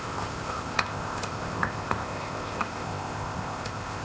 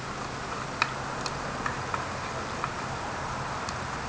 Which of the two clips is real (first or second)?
second